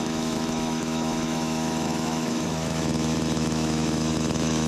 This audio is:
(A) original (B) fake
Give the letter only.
B